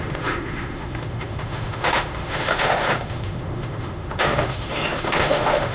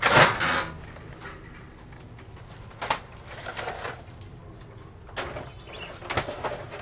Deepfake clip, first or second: first